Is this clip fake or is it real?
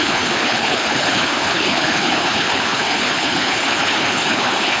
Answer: fake